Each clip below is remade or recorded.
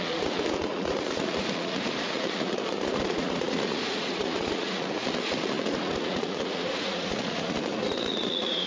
remade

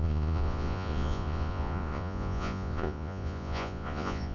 remade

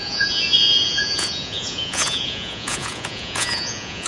remade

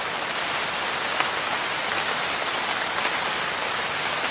recorded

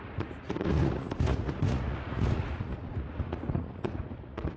remade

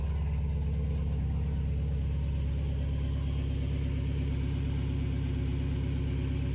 recorded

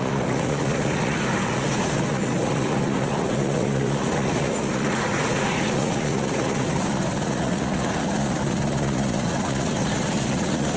remade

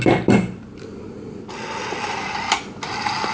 recorded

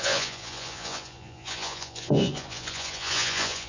remade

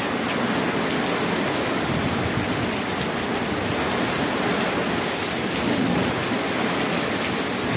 recorded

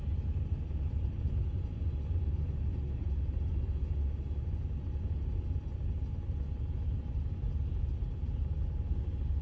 recorded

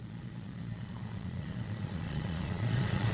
remade